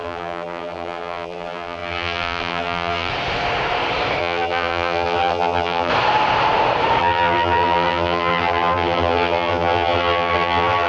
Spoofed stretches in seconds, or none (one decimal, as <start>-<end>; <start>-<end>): 0.0-3.1; 4.2-5.9; 7.0-10.9